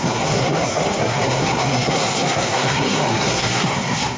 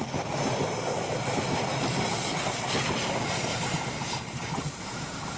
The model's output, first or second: first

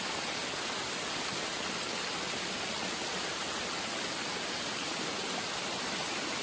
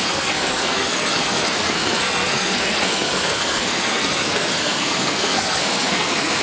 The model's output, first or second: second